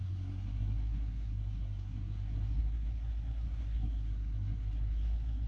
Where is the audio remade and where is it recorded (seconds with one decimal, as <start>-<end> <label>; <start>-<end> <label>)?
0.0-5.5 remade